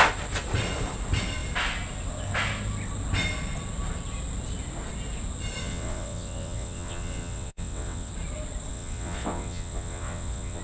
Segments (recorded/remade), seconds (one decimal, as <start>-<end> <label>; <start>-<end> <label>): 0.0-5.6 recorded; 5.6-8.1 remade; 8.1-8.7 recorded; 8.7-10.6 remade

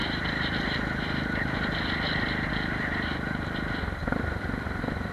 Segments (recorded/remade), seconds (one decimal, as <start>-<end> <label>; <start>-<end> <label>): 0.0-4.0 recorded; 4.0-5.1 remade

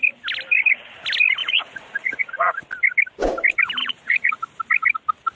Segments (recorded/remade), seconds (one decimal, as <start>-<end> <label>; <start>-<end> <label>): 0.0-1.4 recorded; 1.4-2.6 remade; 2.6-3.8 recorded; 3.8-4.4 remade; 4.4-5.4 recorded

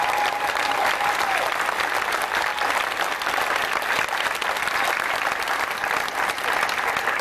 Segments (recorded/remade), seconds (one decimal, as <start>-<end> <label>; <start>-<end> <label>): 0.0-7.2 recorded

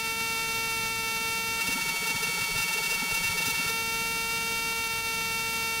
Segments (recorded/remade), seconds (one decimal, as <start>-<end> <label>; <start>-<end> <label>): 0.0-1.6 recorded; 1.6-3.7 remade; 3.7-5.8 recorded

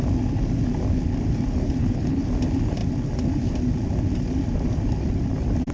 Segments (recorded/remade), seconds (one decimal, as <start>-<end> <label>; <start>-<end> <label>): 0.0-1.8 recorded; 1.8-2.3 remade; 2.3-5.7 recorded

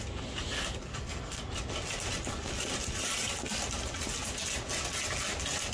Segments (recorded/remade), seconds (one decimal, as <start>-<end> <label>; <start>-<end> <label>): 0.0-0.9 recorded; 0.9-1.4 remade; 1.4-5.7 recorded